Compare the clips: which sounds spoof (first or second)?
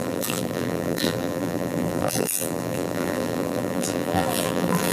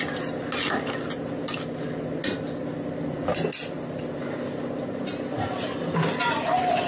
first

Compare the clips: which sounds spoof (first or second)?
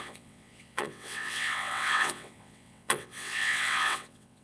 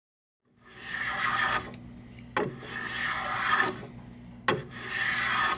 first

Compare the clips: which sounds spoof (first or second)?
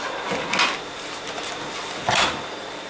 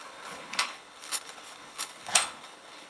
second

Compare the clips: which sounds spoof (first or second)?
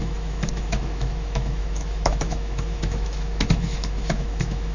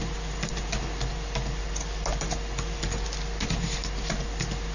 first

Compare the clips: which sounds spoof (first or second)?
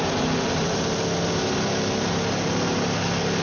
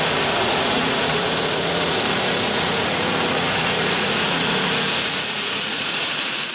second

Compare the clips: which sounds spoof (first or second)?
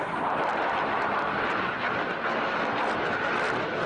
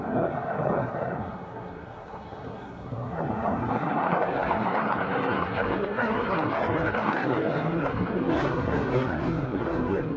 second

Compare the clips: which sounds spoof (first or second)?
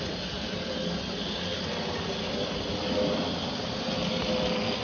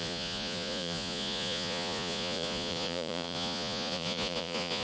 second